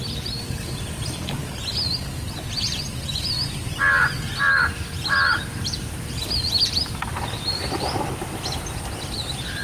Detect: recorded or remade remade